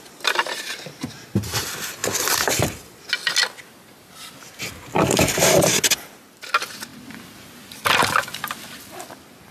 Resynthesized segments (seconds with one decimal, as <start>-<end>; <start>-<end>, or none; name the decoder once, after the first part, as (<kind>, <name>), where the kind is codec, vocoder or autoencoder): none